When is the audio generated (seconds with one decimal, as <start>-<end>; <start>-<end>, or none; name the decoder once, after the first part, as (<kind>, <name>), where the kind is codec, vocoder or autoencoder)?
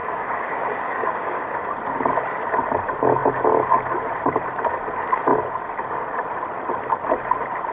0.0-1.7 (codec, DAC)